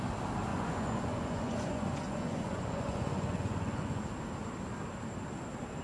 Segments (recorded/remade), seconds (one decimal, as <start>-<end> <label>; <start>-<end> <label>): 0.0-0.5 recorded; 0.5-4.0 remade; 4.0-5.8 recorded